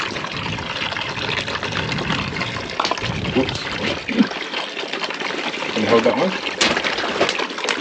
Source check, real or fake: real